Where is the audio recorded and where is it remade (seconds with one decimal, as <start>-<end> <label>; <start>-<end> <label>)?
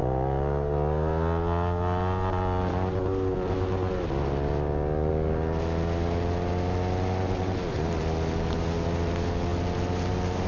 0.0-10.5 recorded